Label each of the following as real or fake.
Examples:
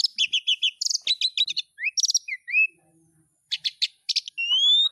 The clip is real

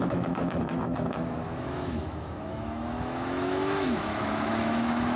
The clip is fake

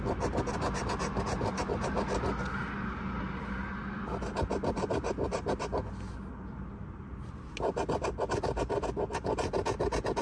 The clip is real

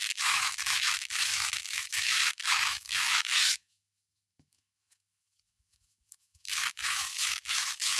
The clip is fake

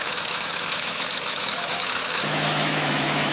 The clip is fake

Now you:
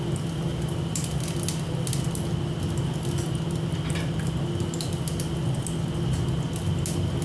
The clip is real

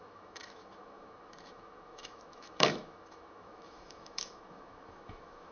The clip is fake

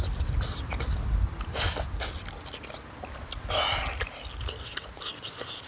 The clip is real